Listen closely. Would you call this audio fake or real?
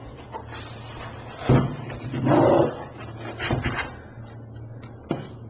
real